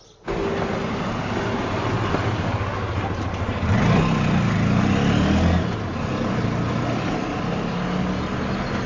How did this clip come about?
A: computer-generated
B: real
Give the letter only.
B